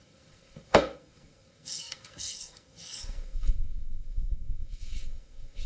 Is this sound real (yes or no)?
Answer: no